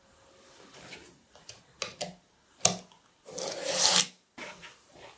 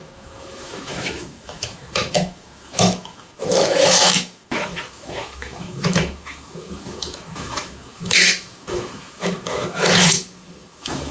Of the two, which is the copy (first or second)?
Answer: second